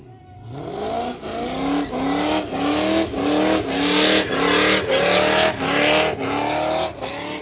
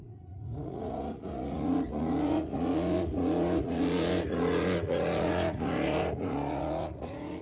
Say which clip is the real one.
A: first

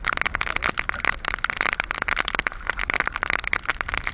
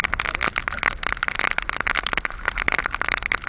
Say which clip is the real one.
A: second